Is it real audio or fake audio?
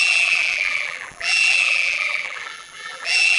fake